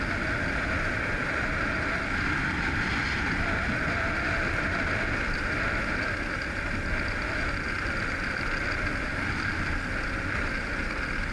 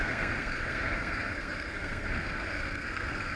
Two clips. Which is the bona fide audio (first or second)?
first